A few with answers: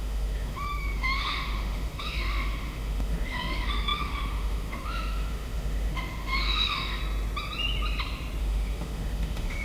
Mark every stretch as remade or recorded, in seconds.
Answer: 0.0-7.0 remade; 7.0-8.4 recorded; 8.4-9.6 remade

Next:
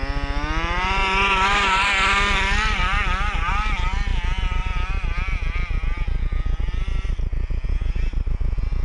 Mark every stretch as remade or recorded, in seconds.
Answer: 0.0-8.8 recorded

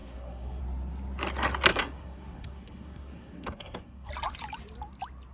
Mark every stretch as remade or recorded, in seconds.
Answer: 0.0-0.6 remade; 0.6-1.7 recorded; 1.7-4.1 remade; 4.1-5.3 recorded

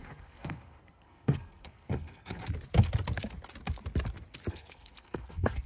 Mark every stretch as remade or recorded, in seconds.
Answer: 0.0-2.4 remade; 2.4-4.5 recorded; 4.5-5.7 remade

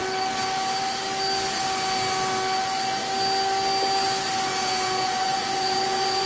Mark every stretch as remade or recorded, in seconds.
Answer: 0.0-4.5 recorded; 4.5-6.3 remade